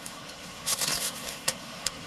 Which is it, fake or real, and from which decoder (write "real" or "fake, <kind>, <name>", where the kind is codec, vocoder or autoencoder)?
fake, codec, SNAC